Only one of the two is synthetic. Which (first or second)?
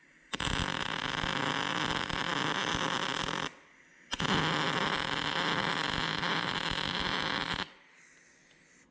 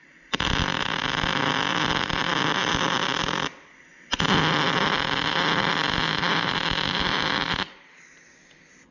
second